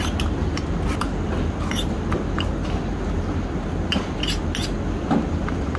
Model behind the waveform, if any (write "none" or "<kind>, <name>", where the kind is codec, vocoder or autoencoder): none